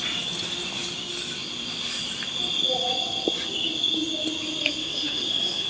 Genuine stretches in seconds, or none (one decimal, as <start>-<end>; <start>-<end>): 0.0-4.8